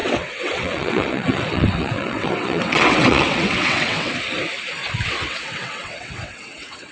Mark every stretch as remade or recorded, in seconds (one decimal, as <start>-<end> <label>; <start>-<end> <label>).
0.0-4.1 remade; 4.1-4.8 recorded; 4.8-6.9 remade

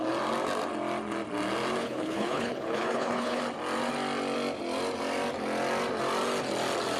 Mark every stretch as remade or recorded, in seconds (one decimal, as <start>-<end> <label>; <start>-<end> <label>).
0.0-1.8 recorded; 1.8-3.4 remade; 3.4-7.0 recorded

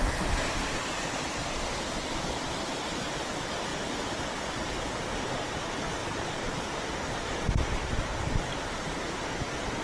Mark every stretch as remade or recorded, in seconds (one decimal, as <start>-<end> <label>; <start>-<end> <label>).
0.0-6.0 recorded; 6.0-6.6 remade; 6.6-7.8 recorded; 7.8-8.9 remade; 8.9-9.8 recorded

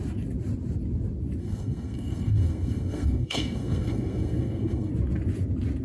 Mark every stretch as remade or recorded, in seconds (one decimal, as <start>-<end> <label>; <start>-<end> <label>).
0.0-1.4 recorded; 1.4-4.9 remade; 4.9-5.8 recorded